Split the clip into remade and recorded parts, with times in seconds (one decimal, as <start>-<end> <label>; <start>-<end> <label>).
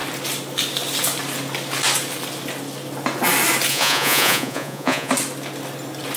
0.0-3.7 recorded; 3.7-5.1 remade; 5.1-6.2 recorded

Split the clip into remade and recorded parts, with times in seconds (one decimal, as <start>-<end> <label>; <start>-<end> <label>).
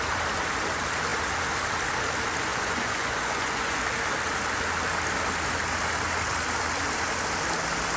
0.0-2.5 recorded; 2.5-3.8 remade; 3.8-8.0 recorded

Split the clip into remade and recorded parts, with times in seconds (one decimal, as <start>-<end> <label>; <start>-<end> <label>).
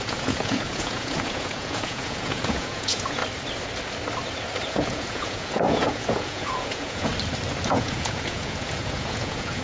0.0-3.2 remade; 3.2-4.7 recorded; 4.7-7.1 remade; 7.1-7.7 recorded; 7.7-9.6 remade